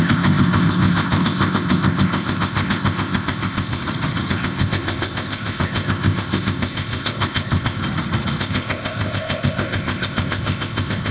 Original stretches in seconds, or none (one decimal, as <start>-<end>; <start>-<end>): 3.8-4.3; 7.8-8.4